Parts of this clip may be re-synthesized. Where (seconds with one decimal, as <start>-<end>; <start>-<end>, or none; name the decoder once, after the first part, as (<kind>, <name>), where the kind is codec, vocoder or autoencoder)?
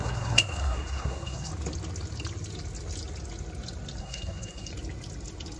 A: 0.0-1.5 (codec, SNAC); 4.0-4.7